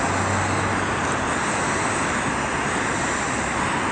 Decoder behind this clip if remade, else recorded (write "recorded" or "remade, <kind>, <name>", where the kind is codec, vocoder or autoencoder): recorded